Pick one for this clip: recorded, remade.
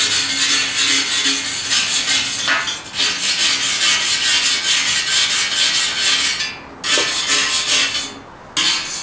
recorded